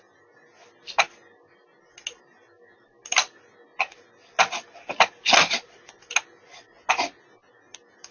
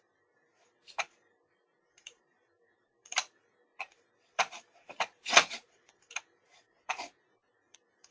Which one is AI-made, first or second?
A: second